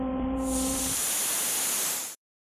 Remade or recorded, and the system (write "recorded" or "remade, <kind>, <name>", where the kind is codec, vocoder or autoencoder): remade, vocoder, BigVGAN v2